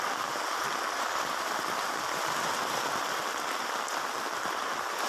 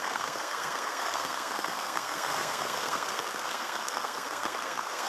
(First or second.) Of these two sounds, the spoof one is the second